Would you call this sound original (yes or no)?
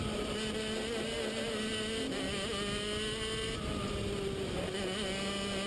yes